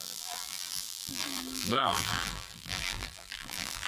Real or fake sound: fake